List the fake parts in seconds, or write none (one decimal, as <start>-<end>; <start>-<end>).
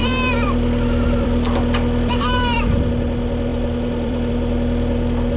0.0-2.9; 3.5-4.3